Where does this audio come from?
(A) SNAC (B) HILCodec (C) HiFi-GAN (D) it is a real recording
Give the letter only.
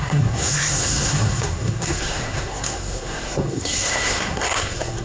A